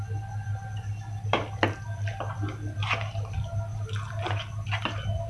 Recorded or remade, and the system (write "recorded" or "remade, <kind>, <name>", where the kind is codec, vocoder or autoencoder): recorded